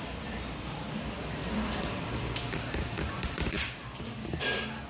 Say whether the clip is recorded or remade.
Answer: remade